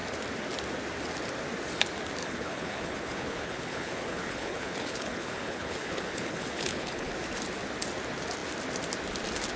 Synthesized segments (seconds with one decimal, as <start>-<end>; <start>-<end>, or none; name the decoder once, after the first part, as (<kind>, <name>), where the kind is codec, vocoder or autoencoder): 2.2-7.1 (codec, HILCodec)